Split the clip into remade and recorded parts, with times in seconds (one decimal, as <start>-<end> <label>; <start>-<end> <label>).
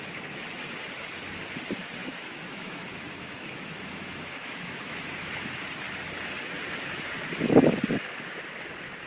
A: 0.0-2.0 recorded; 2.0-5.6 remade; 5.6-9.1 recorded